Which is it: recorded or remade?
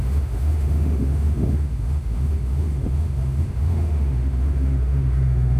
remade